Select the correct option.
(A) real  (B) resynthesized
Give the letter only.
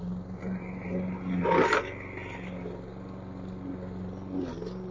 A